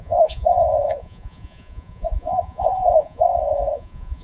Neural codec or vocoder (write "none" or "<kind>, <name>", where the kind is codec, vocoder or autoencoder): vocoder, Vocos